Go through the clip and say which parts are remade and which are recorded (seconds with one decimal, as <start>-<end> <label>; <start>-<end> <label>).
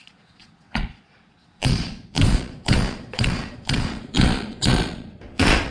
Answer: 0.0-5.7 remade